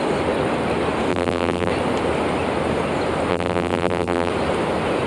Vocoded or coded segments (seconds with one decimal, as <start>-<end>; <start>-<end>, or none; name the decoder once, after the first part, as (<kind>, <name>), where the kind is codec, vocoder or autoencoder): 1.1-1.7 (vocoder, BigVGAN v2); 3.3-4.3